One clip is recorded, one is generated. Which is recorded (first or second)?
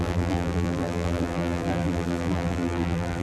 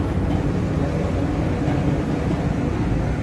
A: second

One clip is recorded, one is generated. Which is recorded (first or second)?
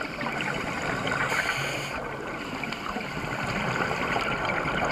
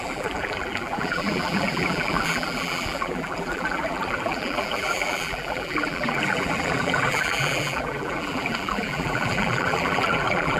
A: first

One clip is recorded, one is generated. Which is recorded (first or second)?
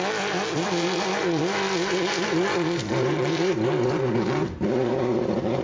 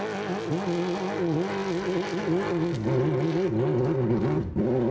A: second